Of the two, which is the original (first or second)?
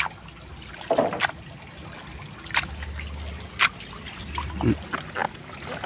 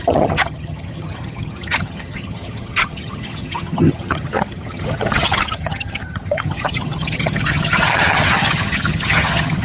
first